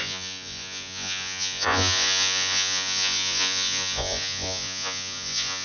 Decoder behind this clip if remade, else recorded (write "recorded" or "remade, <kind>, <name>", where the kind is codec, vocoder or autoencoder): remade, vocoder, Vocos